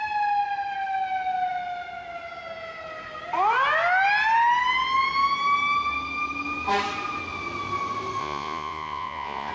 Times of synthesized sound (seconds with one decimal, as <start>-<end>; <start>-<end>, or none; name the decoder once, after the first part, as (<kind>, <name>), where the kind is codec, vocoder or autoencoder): 8.2-9.5 (vocoder, Vocos)